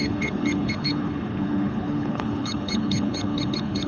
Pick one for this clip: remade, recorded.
remade